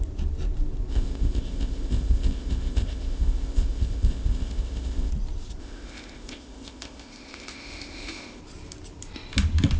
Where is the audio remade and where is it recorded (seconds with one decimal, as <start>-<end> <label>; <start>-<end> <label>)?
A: 0.0-0.9 recorded; 0.9-5.1 remade; 5.1-5.6 recorded; 5.6-8.4 remade; 8.4-9.8 recorded